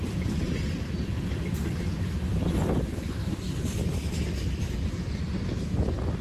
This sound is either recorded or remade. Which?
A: recorded